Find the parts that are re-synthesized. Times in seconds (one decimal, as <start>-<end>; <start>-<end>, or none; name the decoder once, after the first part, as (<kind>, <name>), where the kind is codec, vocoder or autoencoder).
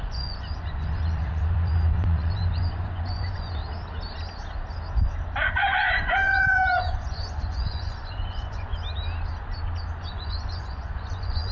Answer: 0.0-3.6 (vocoder, Vocos); 5.5-8.7; 10.0-11.5